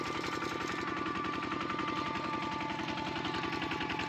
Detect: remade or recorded recorded